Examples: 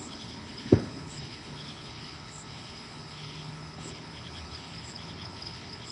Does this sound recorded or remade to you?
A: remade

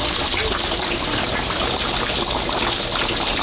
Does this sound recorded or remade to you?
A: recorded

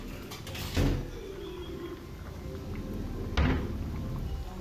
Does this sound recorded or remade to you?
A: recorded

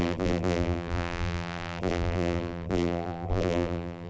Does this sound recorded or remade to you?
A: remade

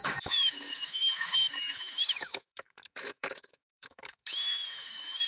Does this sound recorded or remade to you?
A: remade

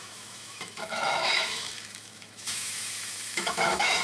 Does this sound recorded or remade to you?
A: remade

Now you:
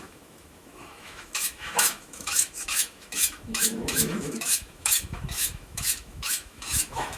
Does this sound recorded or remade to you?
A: remade